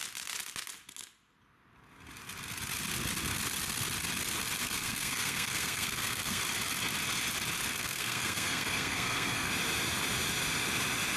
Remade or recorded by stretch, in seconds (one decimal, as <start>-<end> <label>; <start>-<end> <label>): 0.0-4.6 recorded; 4.6-6.4 remade; 6.4-7.7 recorded; 7.7-9.5 remade; 9.5-11.2 recorded